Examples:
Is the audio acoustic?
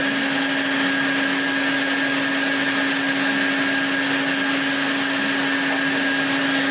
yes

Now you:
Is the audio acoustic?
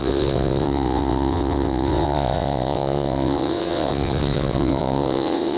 no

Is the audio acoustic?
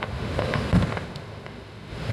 no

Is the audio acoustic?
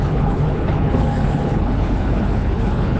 no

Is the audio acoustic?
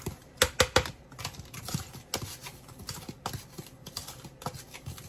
yes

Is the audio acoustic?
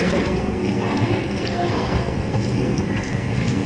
no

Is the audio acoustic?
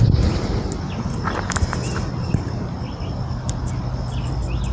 yes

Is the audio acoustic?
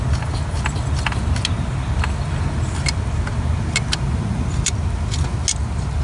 yes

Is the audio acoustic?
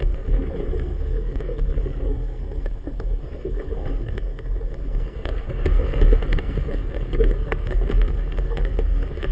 no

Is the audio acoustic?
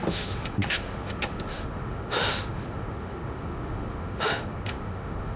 no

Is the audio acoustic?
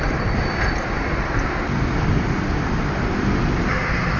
yes